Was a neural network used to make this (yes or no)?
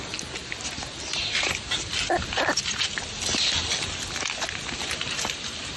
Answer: no